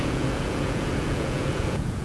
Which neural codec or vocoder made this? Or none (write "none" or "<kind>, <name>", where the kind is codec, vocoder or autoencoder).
vocoder, Vocos